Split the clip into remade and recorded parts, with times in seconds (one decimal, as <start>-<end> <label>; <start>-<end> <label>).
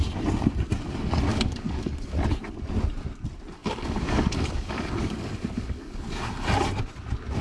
0.0-1.3 recorded; 1.3-2.1 remade; 2.1-3.6 recorded; 3.6-6.3 remade; 6.3-7.4 recorded